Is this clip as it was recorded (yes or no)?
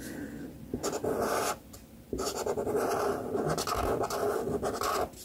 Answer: yes